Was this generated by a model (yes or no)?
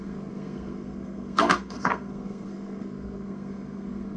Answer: yes